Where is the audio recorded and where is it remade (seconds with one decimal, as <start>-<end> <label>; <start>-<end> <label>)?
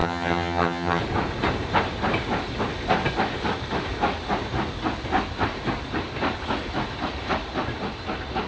0.0-1.0 remade; 1.0-8.5 recorded